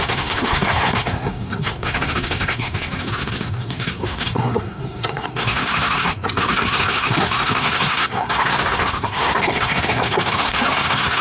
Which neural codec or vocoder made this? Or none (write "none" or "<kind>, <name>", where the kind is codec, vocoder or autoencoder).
codec, SNAC